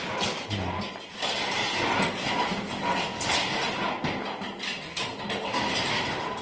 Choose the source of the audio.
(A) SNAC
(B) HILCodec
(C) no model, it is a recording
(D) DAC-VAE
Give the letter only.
C